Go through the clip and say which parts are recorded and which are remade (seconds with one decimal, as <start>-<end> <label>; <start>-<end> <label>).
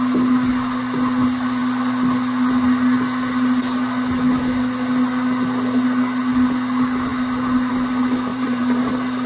0.0-8.3 recorded; 8.3-8.9 remade; 8.9-9.3 recorded